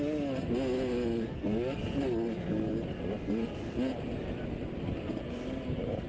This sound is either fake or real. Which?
real